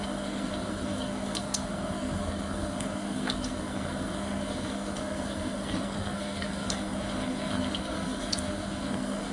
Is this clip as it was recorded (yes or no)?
no